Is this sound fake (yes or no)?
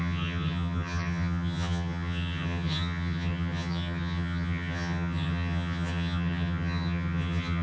yes